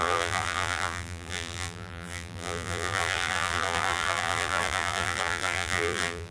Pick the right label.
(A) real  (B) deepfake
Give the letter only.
B